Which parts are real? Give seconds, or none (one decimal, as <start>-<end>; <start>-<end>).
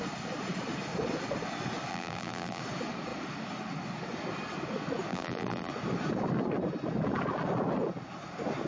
0.0-1.9; 2.6-5.1; 5.7-8.7